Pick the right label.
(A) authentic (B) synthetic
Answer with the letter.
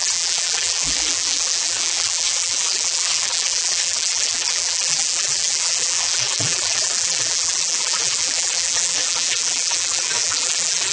B